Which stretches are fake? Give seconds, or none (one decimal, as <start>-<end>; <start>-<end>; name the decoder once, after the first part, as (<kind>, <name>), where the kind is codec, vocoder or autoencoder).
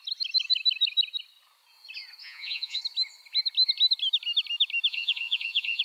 2.2-2.8 (vocoder, Vocos); 4.9-5.8